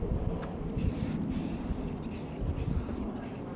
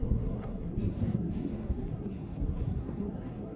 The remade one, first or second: second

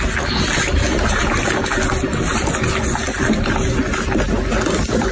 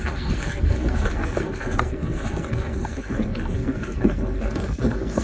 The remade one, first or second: second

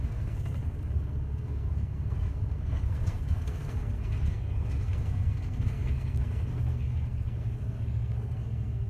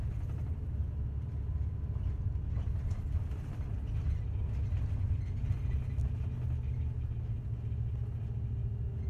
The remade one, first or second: first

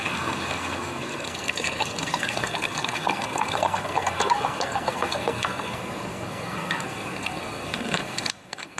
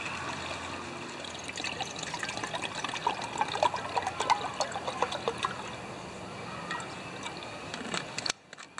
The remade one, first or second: first